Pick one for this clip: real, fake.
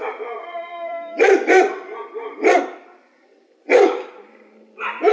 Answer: fake